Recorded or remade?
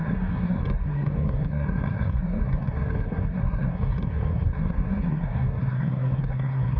remade